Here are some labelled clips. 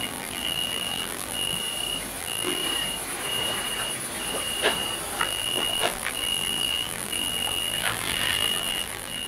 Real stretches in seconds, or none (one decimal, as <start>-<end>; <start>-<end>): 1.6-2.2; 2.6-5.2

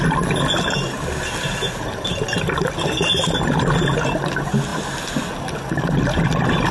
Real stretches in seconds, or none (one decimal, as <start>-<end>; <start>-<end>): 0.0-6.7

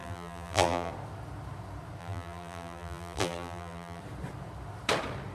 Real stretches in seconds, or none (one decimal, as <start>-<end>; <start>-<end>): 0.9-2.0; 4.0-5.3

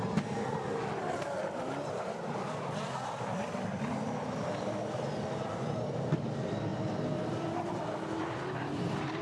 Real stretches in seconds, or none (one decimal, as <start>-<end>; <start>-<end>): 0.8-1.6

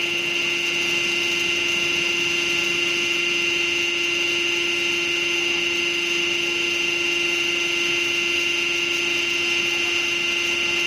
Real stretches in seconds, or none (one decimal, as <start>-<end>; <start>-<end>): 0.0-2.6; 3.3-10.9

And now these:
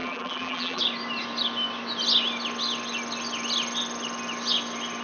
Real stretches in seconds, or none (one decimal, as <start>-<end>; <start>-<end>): 0.8-5.0

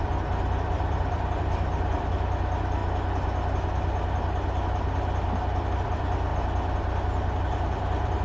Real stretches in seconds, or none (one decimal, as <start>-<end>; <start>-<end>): 2.8-5.6; 6.3-7.4